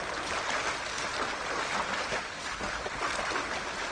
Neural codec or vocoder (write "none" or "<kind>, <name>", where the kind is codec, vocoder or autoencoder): none